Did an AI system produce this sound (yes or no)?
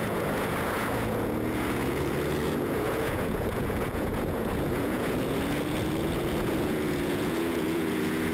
yes